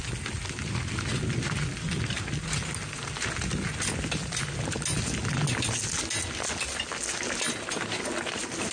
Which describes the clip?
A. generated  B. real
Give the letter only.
B